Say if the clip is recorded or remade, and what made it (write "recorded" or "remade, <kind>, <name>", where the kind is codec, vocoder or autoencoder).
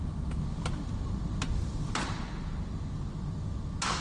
recorded